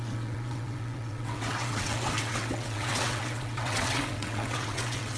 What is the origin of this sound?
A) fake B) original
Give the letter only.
A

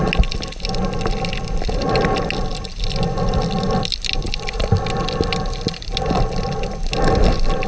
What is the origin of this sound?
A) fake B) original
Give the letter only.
B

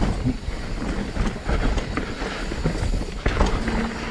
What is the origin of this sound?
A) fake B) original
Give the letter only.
B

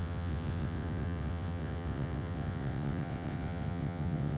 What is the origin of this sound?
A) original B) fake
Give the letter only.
B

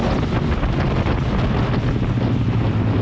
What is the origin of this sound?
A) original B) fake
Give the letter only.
A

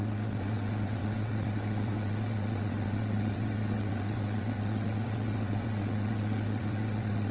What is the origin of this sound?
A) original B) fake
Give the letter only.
B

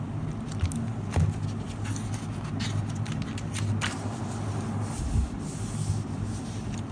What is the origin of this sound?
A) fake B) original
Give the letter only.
B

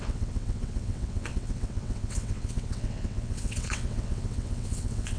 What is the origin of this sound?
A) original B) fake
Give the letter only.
B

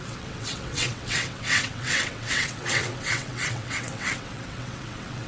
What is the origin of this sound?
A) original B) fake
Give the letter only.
B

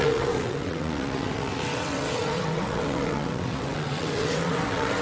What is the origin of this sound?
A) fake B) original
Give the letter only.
A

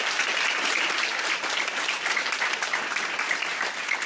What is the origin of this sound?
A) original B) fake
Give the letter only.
A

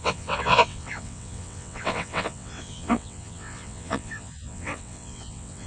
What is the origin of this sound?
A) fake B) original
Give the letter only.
A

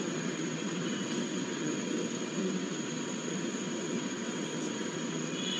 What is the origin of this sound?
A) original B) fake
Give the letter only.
B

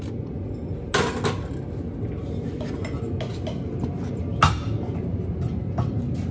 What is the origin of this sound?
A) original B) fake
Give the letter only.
A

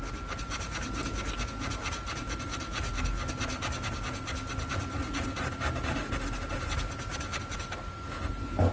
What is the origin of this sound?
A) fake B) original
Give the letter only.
B